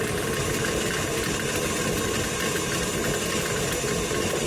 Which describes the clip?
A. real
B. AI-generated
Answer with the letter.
A